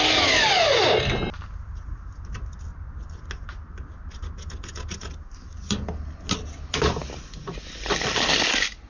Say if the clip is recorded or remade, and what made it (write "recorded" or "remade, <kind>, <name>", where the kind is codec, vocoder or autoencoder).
recorded